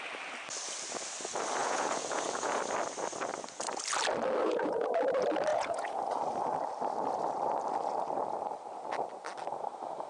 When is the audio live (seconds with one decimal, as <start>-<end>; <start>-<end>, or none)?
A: 0.0-1.6; 2.6-4.4; 4.9-5.5; 6.0-10.1